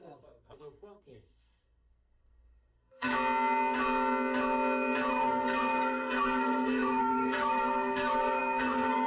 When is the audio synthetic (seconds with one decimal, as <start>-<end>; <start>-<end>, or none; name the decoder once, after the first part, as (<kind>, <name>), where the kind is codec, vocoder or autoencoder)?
0.0-3.1 (codec, SNAC); 5.1-9.1